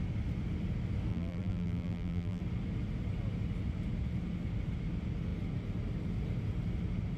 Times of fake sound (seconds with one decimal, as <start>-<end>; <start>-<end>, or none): 1.1-2.4